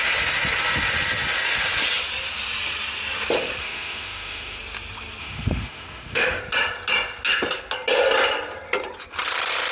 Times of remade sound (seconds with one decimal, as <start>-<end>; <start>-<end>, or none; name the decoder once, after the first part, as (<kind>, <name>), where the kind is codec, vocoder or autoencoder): 3.6-4.6 (autoencoder, DAC-VAE); 5.2-6.4